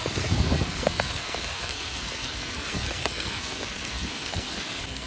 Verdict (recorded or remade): remade